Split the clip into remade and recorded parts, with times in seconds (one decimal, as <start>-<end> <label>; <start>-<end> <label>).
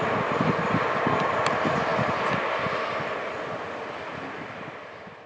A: 0.0-5.3 recorded